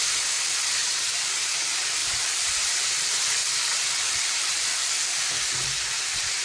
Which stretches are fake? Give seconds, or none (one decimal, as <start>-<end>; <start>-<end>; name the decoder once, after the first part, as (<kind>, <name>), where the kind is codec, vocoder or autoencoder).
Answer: 0.0-3.4 (vocoder, BigVGAN v2); 4.3-4.7; 5.4-6.4